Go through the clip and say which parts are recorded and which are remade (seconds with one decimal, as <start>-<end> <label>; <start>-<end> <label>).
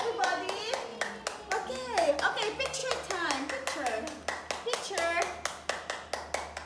0.0-6.7 recorded